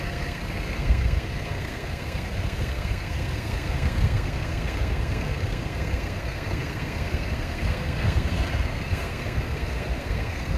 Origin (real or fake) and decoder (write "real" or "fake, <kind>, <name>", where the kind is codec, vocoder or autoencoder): fake, codec, SNAC